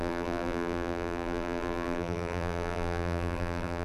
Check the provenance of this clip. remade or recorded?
remade